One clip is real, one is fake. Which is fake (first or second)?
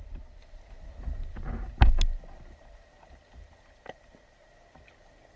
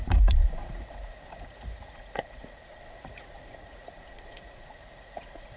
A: second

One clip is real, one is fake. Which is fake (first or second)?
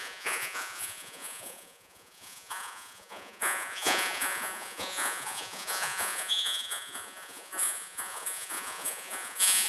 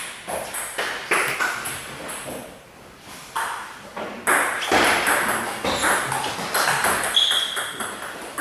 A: first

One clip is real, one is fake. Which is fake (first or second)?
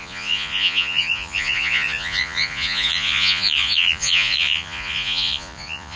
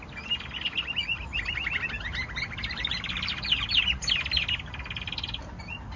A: first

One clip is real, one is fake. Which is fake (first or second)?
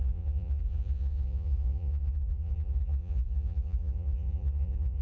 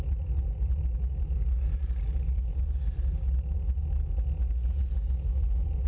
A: first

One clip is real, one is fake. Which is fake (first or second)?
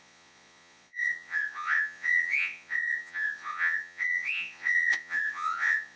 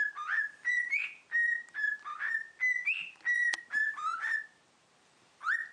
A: first